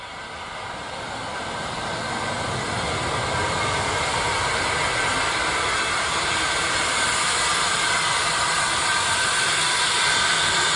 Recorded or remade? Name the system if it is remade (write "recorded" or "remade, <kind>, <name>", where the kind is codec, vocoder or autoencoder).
recorded